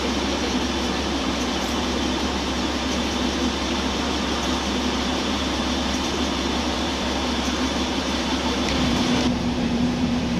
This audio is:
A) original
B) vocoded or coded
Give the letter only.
B